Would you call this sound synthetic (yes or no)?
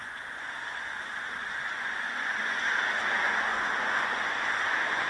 yes